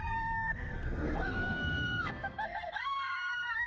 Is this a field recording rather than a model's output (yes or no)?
no